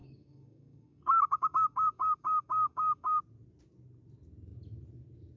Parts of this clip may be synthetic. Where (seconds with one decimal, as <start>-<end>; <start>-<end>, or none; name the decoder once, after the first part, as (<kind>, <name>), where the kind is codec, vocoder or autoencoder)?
0.0-3.2 (codec, DAC)